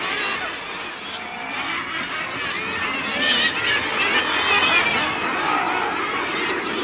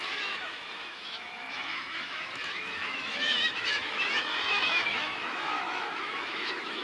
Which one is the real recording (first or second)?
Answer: first